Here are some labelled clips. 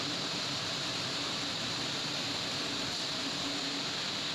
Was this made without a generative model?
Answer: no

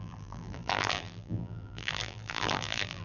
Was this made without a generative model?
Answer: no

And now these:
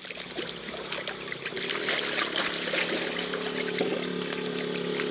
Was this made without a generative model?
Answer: yes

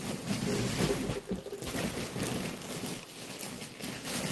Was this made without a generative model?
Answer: yes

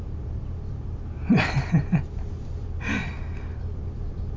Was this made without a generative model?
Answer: no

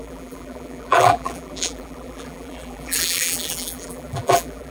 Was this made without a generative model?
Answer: no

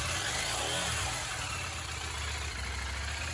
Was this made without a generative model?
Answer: yes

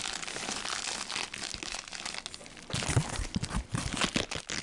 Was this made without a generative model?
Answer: yes